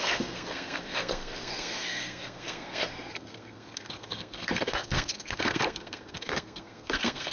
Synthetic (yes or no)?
yes